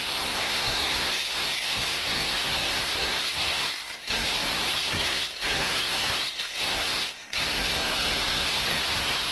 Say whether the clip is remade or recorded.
remade